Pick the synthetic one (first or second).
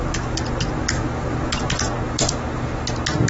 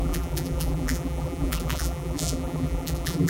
second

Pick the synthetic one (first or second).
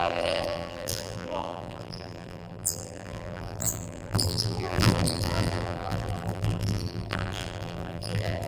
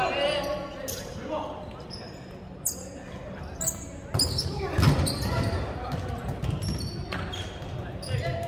first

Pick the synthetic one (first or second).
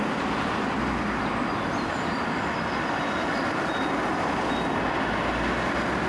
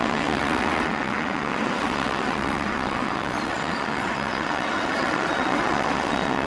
second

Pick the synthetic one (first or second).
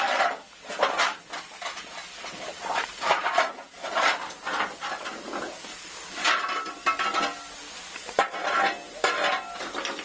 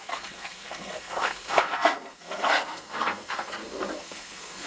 second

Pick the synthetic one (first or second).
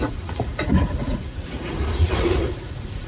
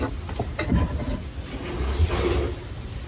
first